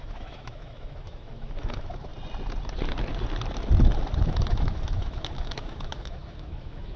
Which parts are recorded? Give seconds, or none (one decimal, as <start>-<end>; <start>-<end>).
2.1-4.2